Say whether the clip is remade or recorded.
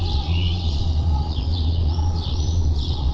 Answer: remade